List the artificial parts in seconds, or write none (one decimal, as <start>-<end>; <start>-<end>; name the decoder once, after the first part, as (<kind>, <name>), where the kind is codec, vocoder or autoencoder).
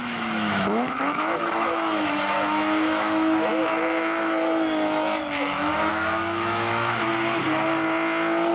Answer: 0.0-7.1 (autoencoder, DAC-VAE)